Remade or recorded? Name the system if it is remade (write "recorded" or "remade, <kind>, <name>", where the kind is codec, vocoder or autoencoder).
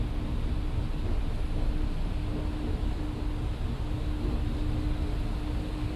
recorded